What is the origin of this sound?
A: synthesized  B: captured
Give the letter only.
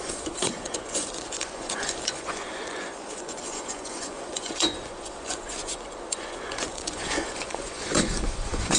A